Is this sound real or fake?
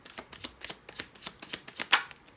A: real